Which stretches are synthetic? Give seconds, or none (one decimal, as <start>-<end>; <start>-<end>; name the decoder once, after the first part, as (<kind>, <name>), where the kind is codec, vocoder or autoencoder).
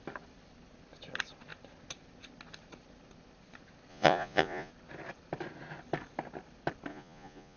3.9-4.7 (vocoder, Vocos); 6.9-7.6